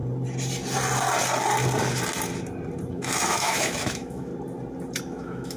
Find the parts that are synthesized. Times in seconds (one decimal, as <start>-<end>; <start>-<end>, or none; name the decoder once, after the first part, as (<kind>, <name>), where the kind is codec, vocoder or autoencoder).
2.9-4.3 (autoencoder, DAC-VAE); 5.0-5.6